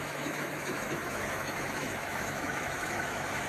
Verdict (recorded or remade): remade